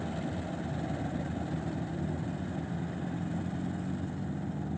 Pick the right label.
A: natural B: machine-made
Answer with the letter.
A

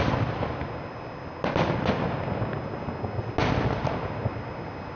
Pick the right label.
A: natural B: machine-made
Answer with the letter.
A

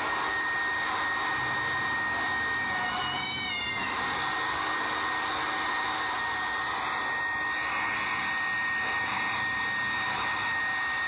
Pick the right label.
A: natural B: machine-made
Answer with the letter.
A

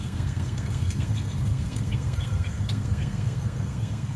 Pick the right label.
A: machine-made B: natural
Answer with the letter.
A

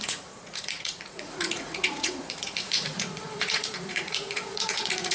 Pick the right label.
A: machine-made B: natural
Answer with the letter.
A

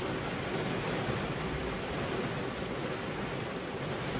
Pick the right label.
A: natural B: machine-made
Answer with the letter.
A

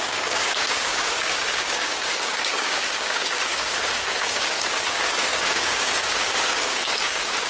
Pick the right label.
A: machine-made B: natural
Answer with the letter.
A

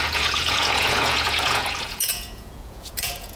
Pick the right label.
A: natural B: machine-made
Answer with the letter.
B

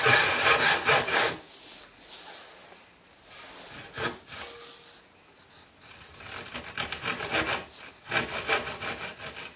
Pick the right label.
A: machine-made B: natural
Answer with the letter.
B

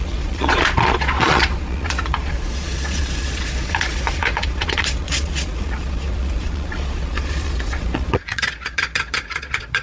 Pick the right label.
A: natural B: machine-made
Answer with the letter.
B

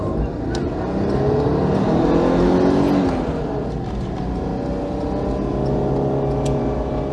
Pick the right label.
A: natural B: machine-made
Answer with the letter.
A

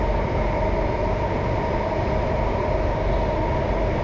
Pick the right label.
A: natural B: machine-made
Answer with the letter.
A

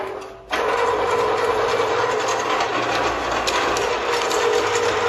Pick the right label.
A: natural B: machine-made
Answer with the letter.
A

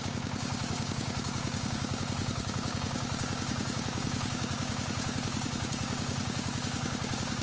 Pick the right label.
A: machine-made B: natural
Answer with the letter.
A